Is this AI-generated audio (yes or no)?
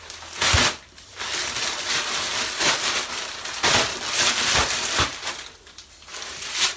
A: no